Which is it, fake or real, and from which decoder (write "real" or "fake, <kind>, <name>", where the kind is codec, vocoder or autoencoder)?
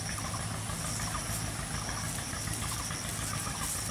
real